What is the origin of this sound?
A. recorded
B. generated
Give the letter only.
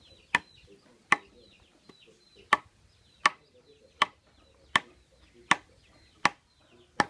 A